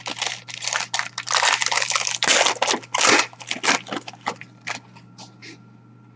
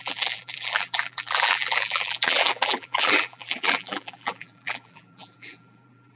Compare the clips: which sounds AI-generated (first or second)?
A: second